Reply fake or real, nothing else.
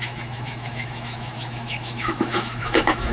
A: fake